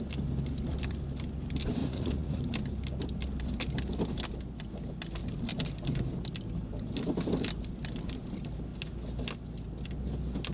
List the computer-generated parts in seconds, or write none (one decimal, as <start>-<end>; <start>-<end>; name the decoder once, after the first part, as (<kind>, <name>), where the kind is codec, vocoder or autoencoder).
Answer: 1.8-2.4 (vocoder, Vocos)